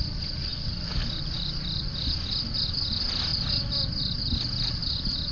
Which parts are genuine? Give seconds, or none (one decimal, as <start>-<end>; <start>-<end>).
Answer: 0.0-5.3